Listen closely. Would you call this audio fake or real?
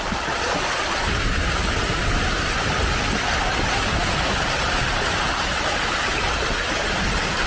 real